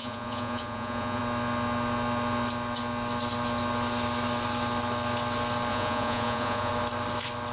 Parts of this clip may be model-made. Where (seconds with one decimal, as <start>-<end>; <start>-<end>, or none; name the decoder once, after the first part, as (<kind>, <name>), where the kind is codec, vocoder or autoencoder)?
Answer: 0.0-1.2 (vocoder, Vocos); 5.7-6.7